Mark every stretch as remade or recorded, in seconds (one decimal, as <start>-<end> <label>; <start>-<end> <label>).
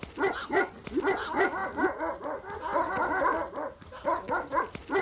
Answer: 0.0-5.0 recorded